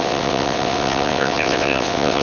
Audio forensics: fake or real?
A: fake